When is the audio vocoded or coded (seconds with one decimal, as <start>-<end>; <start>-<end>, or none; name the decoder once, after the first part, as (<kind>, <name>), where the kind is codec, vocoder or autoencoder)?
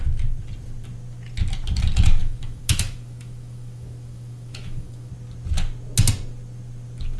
2.2-5.1 (autoencoder, DAC-VAE)